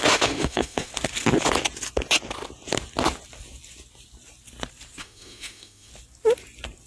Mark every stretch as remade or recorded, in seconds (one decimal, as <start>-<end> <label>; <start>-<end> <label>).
0.0-0.9 remade; 0.9-5.0 recorded; 5.0-5.9 remade; 5.9-6.9 recorded